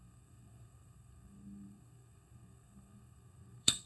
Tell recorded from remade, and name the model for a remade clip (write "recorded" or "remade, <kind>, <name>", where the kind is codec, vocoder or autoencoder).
remade, codec, SNAC